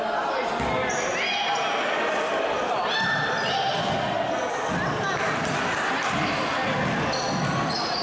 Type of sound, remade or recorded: recorded